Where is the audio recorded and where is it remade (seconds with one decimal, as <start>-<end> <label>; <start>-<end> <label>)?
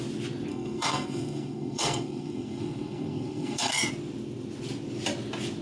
0.0-0.5 recorded; 0.5-3.9 remade; 3.9-5.6 recorded